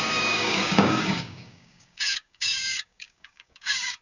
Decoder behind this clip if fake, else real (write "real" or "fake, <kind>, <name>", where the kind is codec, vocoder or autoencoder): fake, codec, DAC